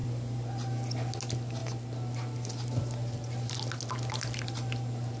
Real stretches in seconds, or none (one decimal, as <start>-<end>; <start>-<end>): 0.0-5.2